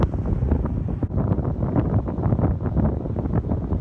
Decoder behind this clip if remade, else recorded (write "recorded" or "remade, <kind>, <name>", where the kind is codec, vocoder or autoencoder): recorded